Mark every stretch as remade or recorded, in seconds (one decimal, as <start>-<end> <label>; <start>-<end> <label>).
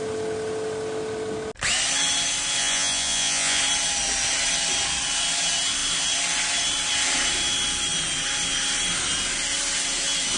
0.0-2.6 recorded; 2.6-3.6 remade; 3.6-10.4 recorded